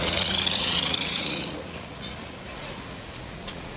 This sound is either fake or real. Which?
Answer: fake